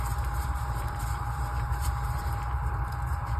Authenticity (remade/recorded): remade